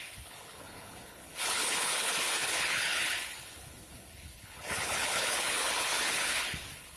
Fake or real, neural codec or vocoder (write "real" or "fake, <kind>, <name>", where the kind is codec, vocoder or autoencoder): fake, codec, HILCodec